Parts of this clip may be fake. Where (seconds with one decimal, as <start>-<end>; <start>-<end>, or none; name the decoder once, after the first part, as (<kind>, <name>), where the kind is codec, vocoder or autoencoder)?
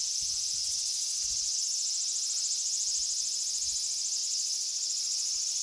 0.6-1.6 (vocoder, Vocos); 4.2-5.6